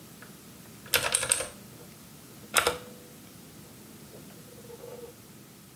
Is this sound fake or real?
real